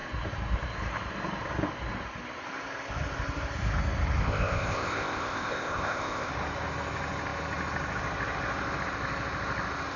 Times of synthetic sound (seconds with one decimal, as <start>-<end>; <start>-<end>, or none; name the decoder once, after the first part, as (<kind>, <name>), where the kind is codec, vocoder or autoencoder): 4.2-6.3 (codec, ZipCodec)